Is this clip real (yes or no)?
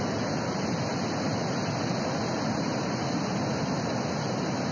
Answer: yes